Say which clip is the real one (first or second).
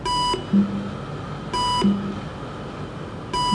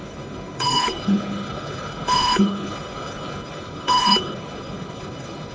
first